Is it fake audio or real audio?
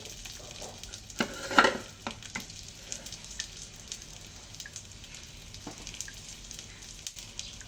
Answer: real